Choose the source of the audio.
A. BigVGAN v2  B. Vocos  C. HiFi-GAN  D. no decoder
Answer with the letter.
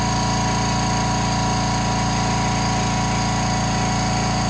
D